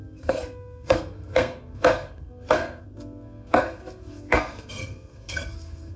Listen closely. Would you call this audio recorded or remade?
remade